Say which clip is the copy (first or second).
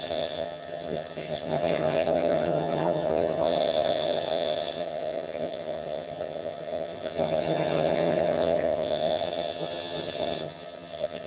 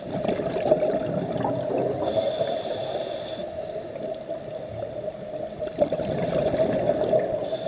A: first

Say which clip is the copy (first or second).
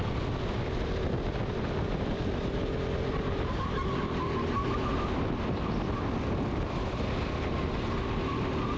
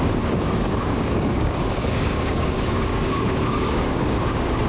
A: second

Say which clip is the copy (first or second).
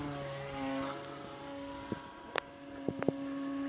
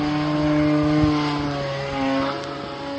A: first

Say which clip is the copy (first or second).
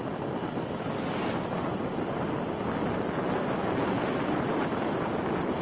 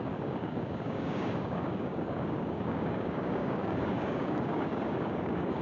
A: second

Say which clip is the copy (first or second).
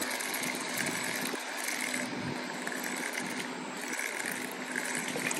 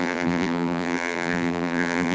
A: second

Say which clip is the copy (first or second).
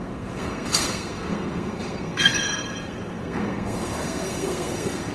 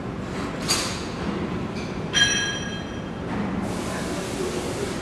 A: first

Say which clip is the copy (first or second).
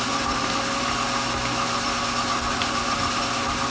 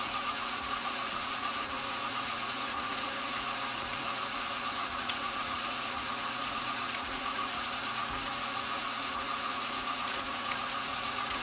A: second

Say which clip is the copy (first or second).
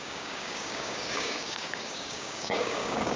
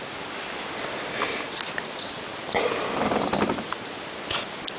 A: first